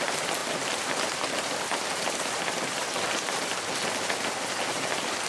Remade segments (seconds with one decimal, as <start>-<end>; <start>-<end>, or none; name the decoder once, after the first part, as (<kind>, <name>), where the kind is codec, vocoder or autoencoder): none